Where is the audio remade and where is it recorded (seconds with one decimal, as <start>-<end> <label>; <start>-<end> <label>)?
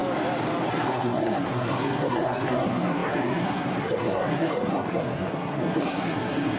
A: 0.0-0.7 recorded; 0.7-6.6 remade